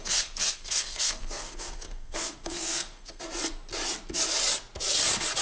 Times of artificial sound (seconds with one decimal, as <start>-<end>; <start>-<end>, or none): 0.0-3.2